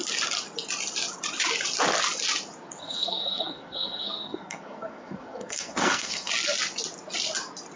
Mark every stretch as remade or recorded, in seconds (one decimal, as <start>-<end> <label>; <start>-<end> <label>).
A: 0.0-2.8 recorded; 2.8-6.3 remade; 6.3-7.8 recorded